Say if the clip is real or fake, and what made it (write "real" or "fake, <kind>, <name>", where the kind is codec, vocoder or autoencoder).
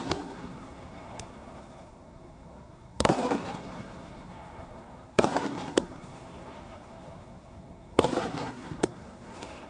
fake, codec, SNAC